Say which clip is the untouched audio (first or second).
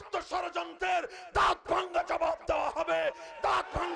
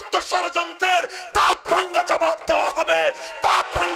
first